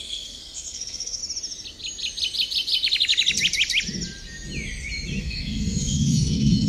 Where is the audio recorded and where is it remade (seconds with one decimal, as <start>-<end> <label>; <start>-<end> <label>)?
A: 0.0-1.2 remade; 1.2-5.2 recorded; 5.2-6.7 remade